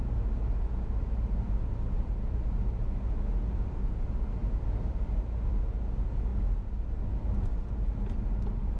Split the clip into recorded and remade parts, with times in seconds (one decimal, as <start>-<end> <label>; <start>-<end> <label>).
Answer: 0.0-8.8 recorded

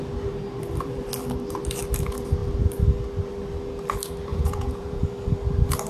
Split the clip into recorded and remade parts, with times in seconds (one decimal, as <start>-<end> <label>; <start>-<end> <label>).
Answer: 0.0-4.3 recorded; 4.3-5.1 remade; 5.1-5.9 recorded